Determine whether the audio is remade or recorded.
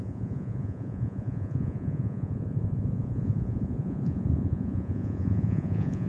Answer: remade